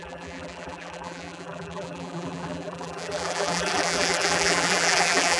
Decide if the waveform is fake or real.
fake